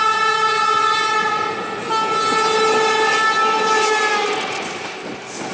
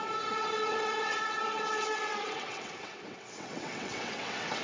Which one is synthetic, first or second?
second